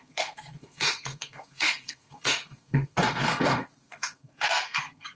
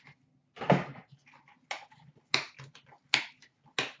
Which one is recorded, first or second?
second